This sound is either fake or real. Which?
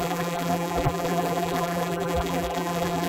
fake